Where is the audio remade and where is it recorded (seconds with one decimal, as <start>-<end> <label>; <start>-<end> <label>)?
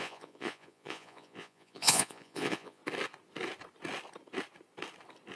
0.0-2.8 remade; 2.8-5.4 recorded